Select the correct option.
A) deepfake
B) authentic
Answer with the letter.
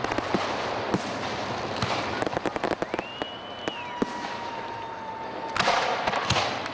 B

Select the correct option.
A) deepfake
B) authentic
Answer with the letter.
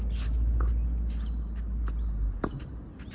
B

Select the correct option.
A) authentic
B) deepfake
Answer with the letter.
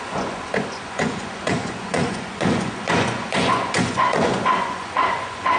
B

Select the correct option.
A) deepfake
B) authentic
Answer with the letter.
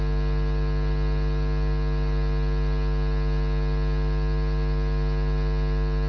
B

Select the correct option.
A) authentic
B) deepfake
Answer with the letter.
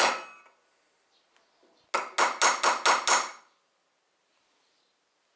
A